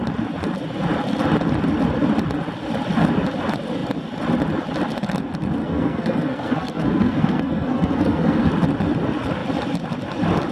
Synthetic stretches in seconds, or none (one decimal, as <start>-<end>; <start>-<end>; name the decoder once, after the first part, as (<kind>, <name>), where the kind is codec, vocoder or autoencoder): 5.6-8.5 (codec, SNAC)